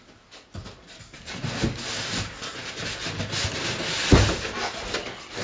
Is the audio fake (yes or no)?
no